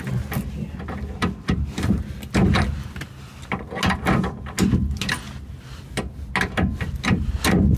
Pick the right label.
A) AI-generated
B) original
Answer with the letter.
B